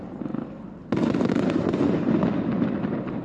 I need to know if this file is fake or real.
real